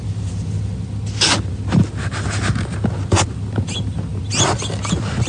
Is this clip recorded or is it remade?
recorded